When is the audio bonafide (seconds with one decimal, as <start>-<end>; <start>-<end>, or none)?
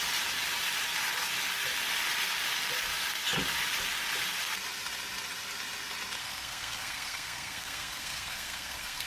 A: 0.0-6.2